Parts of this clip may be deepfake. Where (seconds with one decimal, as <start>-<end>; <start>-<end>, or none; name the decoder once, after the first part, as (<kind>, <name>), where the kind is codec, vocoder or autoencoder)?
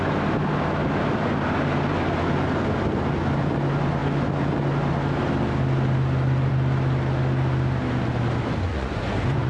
8.7-9.5 (vocoder, Vocos)